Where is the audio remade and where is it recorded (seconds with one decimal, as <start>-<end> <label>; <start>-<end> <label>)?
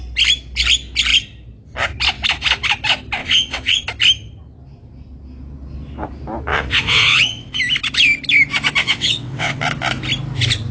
0.0-3.2 recorded; 3.2-3.8 remade; 3.8-6.5 recorded; 6.5-7.6 remade; 7.6-8.8 recorded; 8.8-9.6 remade; 9.6-10.7 recorded